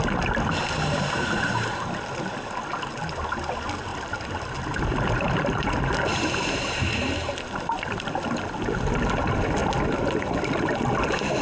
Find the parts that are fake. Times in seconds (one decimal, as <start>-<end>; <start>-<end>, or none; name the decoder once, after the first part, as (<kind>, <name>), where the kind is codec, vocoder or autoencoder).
3.9-8.0 (vocoder, BigVGAN v2)